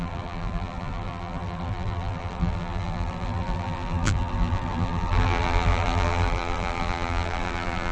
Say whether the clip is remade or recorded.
remade